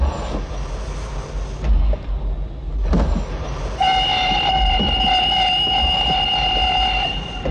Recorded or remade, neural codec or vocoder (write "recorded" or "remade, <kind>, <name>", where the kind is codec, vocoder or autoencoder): recorded